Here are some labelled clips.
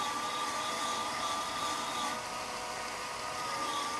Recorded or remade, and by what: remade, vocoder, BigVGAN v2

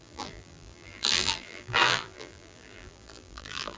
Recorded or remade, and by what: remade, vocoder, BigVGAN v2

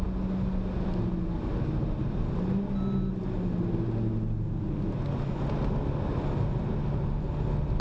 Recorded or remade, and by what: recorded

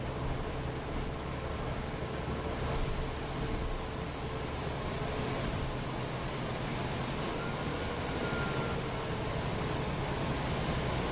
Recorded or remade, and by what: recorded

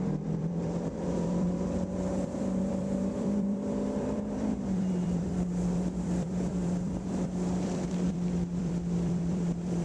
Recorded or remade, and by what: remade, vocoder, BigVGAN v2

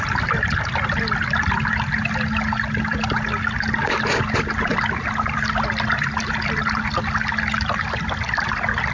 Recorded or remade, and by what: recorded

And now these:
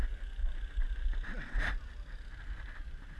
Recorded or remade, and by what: recorded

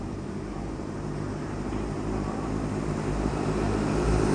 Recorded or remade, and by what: remade, vocoder, BigVGAN v2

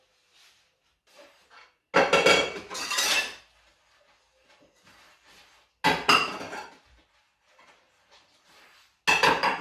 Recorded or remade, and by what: recorded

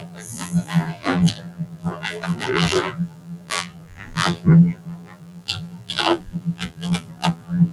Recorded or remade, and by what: remade, vocoder, BigVGAN v2